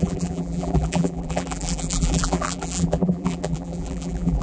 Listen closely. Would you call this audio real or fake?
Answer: fake